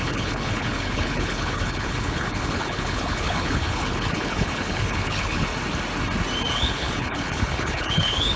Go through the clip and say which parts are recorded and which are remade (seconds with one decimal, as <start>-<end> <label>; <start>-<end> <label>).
0.0-5.5 remade; 5.5-6.5 recorded; 6.5-8.4 remade